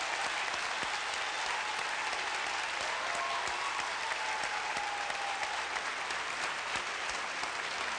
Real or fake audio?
real